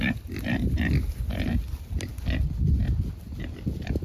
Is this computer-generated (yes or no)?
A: no